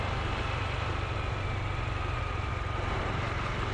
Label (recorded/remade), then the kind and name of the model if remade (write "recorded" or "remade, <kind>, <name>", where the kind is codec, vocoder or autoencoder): recorded